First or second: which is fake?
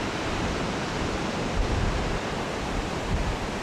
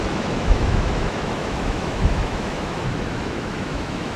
second